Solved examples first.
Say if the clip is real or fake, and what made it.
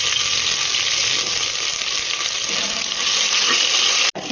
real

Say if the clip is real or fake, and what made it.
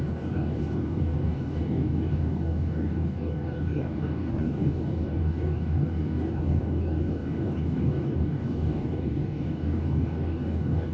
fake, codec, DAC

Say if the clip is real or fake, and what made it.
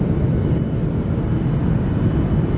real